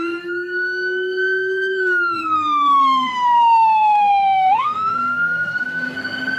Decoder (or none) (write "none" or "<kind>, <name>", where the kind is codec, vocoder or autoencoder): codec, SNAC